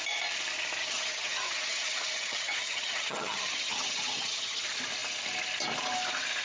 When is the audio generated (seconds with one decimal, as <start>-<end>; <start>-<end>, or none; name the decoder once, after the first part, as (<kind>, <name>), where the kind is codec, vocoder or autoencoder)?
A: 0.8-4.6 (vocoder, HiFi-GAN)